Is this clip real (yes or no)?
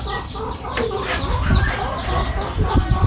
yes